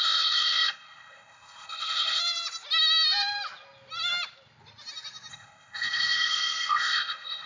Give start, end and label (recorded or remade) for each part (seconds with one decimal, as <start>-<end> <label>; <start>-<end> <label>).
0.0-2.2 remade; 2.2-5.3 recorded; 5.3-7.5 remade